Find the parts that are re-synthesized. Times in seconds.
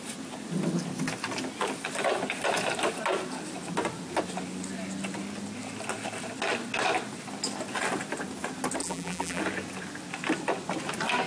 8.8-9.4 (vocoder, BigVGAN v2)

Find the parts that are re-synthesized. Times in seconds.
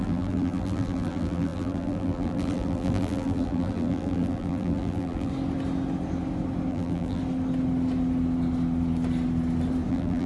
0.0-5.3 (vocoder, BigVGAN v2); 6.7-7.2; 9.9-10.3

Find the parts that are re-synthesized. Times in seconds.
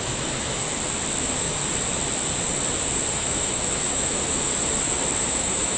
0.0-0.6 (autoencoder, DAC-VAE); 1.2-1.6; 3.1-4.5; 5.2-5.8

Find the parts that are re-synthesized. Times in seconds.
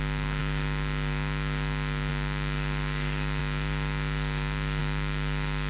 none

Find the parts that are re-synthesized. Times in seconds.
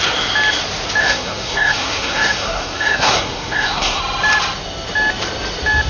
1.0-4.0 (codec, SNAC)